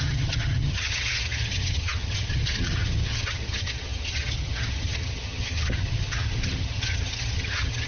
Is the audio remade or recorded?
remade